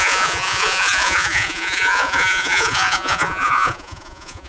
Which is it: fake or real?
fake